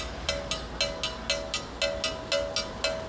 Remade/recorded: recorded